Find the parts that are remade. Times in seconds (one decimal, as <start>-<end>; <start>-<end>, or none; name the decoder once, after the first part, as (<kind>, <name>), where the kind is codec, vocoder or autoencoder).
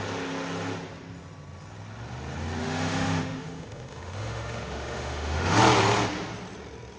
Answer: 2.6-5.6 (autoencoder, DAC-VAE)